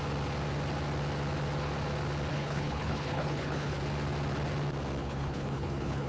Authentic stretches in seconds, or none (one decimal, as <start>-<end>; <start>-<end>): 0.0-2.3; 3.8-5.0